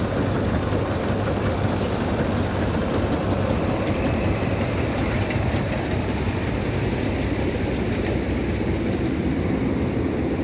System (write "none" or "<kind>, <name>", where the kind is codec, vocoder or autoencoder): vocoder, BigVGAN v2